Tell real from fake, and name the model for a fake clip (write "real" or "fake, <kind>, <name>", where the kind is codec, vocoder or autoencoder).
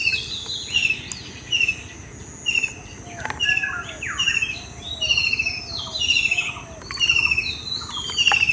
real